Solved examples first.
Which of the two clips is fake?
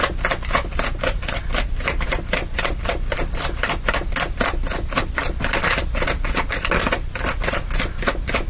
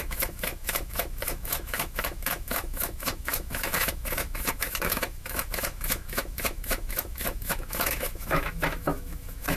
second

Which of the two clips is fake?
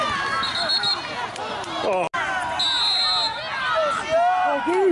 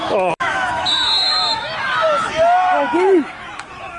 second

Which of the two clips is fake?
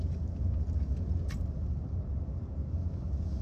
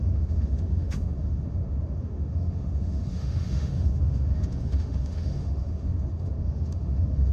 second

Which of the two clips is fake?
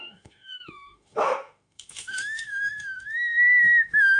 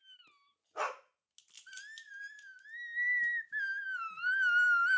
first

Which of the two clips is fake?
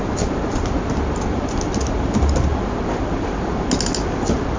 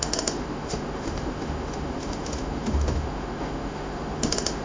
second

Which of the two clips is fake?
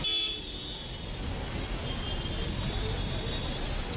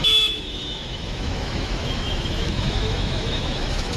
second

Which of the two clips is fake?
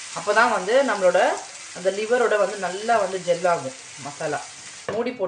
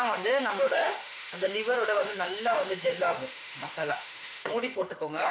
second